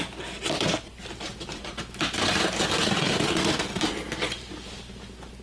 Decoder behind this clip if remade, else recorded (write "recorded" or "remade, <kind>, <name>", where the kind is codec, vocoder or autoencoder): recorded